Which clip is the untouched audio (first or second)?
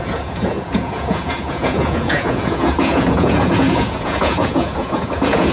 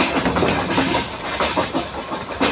second